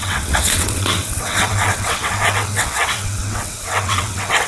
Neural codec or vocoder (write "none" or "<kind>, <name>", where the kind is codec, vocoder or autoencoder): vocoder, WaveNeXt